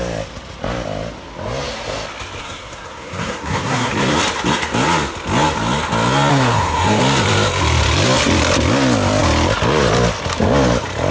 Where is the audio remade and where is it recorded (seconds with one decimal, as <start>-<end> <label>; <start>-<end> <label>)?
0.0-2.4 recorded; 2.4-3.9 remade; 3.9-6.3 recorded; 6.3-7.0 remade; 7.0-11.1 recorded

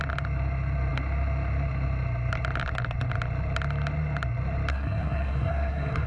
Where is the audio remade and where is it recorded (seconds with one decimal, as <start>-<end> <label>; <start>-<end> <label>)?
0.0-4.7 recorded; 4.7-6.1 remade

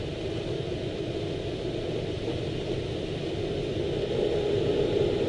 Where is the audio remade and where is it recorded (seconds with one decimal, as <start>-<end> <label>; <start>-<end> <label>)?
0.0-5.3 recorded

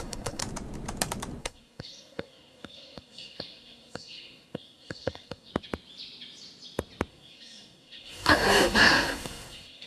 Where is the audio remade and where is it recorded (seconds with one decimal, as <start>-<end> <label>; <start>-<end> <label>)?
0.0-0.4 remade; 0.4-1.4 recorded; 1.4-5.5 remade; 5.5-7.1 recorded; 7.1-9.9 remade

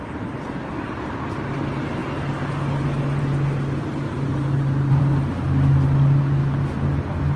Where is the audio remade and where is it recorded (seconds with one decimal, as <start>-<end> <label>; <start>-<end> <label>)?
0.0-7.4 recorded

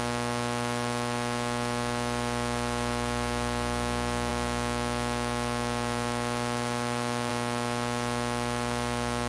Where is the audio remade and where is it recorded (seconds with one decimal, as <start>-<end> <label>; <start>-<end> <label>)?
0.0-9.3 recorded

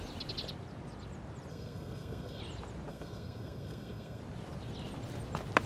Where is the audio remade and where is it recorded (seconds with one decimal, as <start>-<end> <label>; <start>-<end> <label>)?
0.0-1.5 recorded; 1.5-2.4 remade; 2.4-2.9 recorded; 2.9-4.2 remade; 4.2-5.7 recorded